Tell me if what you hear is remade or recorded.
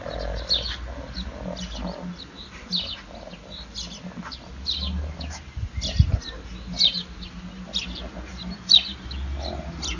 recorded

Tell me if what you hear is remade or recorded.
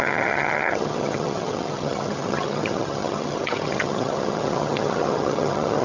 remade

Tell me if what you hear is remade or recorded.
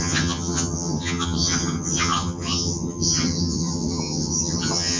remade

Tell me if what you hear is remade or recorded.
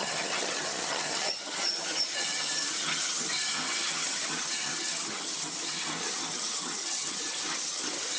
remade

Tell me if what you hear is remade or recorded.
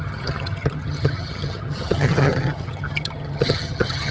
remade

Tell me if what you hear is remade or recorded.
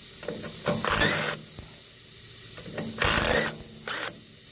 recorded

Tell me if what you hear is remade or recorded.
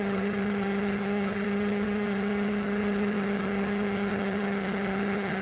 remade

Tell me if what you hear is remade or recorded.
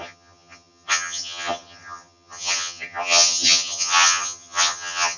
remade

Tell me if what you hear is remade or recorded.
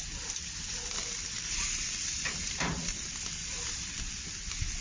recorded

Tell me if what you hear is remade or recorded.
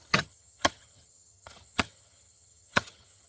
remade